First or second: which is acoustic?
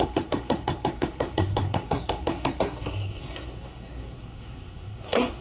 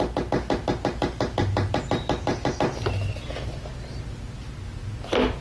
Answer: second